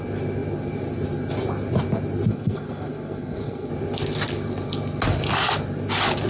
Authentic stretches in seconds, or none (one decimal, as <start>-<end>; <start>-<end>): 0.0-2.3; 3.7-6.3